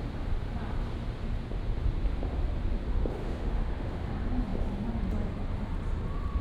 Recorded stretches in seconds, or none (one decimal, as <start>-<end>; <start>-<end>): 0.0-3.2; 4.1-6.4